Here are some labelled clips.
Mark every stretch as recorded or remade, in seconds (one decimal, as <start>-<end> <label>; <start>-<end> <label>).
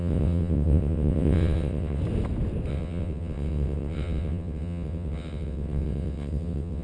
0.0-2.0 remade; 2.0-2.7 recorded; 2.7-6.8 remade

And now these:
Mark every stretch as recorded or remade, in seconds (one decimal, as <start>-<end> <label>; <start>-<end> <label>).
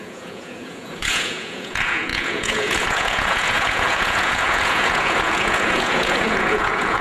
0.0-7.0 remade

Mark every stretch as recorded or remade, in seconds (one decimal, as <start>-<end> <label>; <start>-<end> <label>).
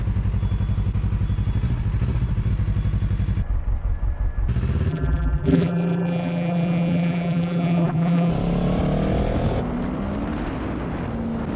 0.0-4.9 recorded; 4.9-8.3 remade; 8.3-11.6 recorded